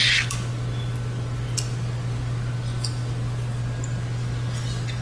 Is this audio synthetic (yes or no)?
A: no